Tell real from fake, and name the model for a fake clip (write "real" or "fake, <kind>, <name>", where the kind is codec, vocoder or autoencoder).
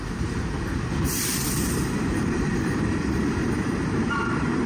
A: fake, vocoder, BigVGAN v2